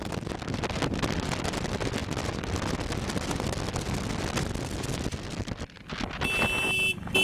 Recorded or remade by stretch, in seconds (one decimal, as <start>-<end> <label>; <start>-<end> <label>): 0.0-7.2 recorded